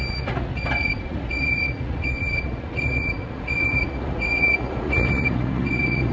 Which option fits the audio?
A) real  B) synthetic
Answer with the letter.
B